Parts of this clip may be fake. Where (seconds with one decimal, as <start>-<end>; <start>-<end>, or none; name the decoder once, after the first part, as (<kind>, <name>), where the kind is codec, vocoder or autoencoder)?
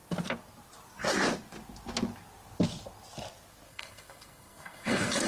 3.7-5.3 (codec, SNAC)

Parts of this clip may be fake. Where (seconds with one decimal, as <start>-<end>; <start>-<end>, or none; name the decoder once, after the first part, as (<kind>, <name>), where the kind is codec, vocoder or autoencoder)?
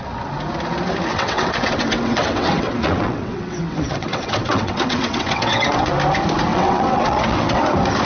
1.1-5.9 (vocoder, WaveNeXt); 6.5-7.6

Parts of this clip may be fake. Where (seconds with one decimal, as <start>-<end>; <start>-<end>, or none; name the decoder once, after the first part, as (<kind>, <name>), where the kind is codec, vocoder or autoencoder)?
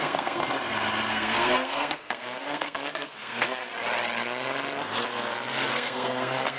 0.0-0.4 (codec, SNAC); 1.1-3.6; 5.7-6.6